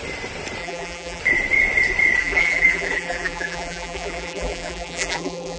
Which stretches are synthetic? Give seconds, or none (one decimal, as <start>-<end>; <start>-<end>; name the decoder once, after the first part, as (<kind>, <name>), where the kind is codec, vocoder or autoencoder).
0.6-1.2 (vocoder, BigVGAN v2); 2.2-5.6